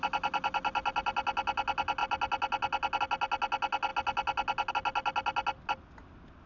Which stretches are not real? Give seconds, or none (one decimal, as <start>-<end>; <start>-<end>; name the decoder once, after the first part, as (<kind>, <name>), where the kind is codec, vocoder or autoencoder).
none